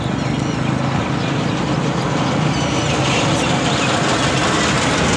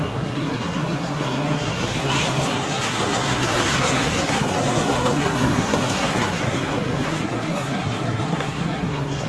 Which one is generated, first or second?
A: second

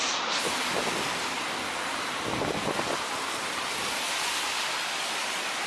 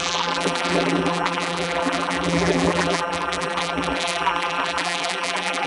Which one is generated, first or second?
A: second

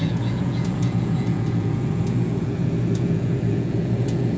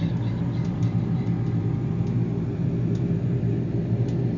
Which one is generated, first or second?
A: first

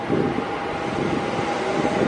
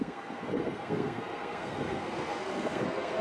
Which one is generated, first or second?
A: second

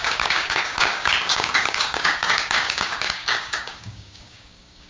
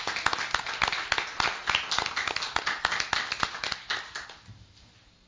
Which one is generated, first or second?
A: first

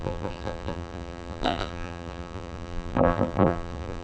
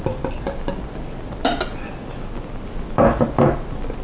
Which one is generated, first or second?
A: first